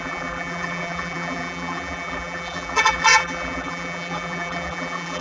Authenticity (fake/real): fake